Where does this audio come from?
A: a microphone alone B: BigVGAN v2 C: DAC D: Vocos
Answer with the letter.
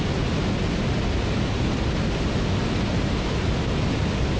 A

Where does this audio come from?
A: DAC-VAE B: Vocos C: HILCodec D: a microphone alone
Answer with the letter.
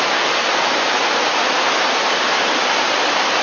D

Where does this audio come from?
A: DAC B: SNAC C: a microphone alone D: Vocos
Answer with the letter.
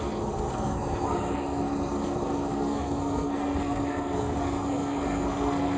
B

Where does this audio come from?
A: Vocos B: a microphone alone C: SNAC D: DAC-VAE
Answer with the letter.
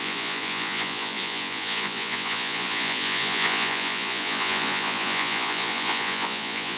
A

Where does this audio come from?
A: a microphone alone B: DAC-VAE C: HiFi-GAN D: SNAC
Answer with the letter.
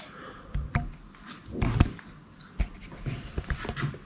A